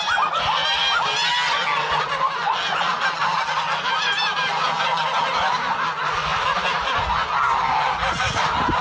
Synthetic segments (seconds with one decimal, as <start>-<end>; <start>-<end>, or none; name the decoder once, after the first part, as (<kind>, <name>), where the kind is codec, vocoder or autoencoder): none